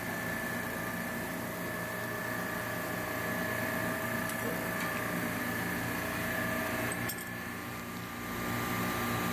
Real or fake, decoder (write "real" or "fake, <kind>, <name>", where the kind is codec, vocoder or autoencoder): real